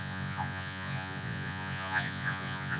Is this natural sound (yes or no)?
no